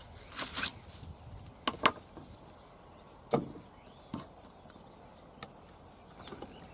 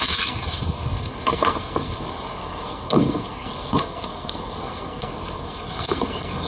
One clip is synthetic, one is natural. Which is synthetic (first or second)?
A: second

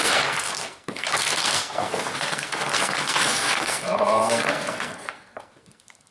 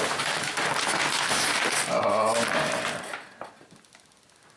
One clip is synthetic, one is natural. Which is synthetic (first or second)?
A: first